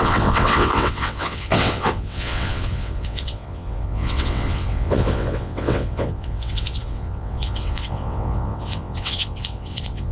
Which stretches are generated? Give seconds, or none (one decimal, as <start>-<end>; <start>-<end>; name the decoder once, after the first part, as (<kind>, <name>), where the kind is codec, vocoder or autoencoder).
0.0-10.1 (vocoder, WaveNeXt)